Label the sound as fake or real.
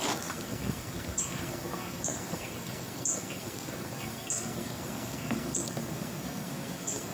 fake